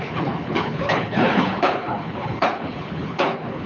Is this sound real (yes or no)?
no